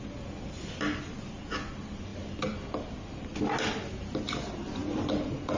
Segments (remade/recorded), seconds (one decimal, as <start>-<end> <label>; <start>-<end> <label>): 0.0-5.6 recorded